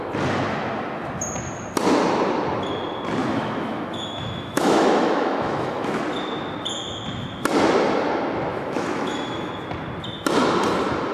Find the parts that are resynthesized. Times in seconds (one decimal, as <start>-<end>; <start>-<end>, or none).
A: 3.2-6.0; 8.5-9.5